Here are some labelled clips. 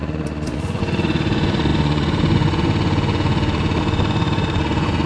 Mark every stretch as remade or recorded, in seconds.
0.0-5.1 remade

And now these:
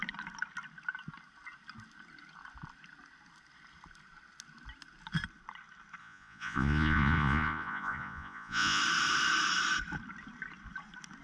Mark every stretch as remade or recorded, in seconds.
0.0-6.0 recorded; 6.0-8.8 remade; 8.8-11.2 recorded

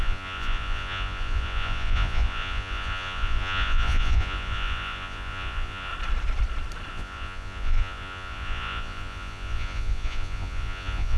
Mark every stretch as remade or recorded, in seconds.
0.0-5.9 remade; 5.9-6.9 recorded; 6.9-11.2 remade

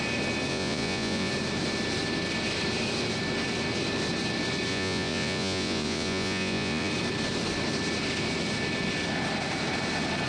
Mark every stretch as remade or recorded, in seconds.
0.0-0.5 recorded; 0.5-1.3 remade; 1.3-4.7 recorded; 4.7-6.9 remade; 6.9-10.3 recorded

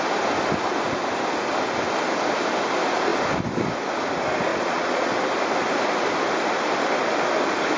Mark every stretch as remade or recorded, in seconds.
0.0-4.5 recorded; 4.5-5.1 remade; 5.1-7.8 recorded

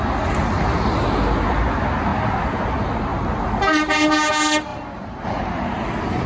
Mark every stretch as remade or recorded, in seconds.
0.0-6.3 recorded

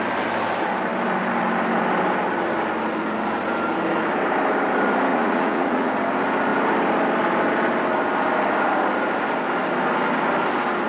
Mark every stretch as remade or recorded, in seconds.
0.0-5.1 recorded; 5.1-5.9 remade; 5.9-10.9 recorded